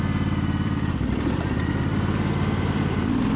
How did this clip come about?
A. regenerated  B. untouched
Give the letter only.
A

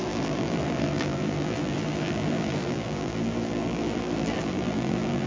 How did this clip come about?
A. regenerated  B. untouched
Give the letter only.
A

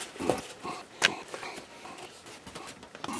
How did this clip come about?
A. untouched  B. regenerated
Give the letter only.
A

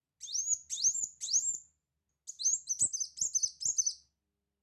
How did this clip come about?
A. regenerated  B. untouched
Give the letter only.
B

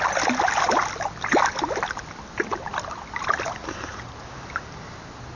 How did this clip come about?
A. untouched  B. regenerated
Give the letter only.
A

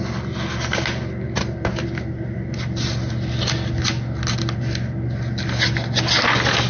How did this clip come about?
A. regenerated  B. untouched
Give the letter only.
B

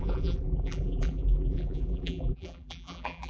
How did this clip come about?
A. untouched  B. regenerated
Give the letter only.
B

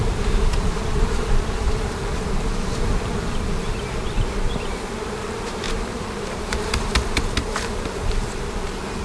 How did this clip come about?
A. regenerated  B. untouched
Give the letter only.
A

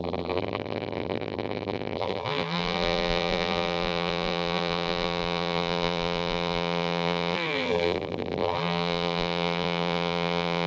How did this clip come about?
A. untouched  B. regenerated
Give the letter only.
B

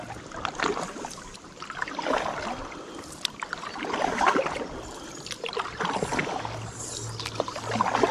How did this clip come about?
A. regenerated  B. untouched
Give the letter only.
B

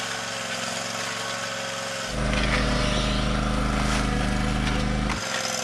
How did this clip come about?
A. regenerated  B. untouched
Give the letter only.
B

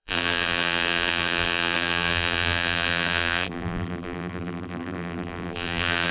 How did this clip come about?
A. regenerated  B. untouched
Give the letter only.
A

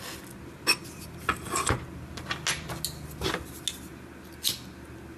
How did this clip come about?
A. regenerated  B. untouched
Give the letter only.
B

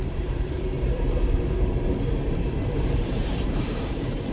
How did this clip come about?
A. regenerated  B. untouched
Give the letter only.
A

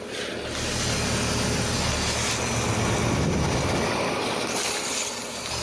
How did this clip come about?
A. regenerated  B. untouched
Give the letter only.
B